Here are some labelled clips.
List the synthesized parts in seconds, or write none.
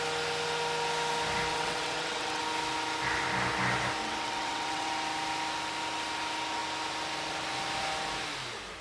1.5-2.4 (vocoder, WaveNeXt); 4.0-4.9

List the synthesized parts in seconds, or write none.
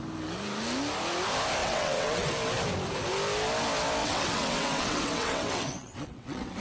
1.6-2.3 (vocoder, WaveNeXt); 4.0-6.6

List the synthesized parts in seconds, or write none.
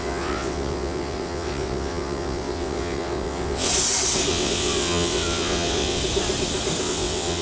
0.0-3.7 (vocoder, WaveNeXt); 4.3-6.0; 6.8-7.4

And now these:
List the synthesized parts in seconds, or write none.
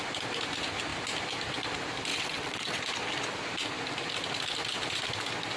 2.1-2.8 (vocoder, WaveNeXt)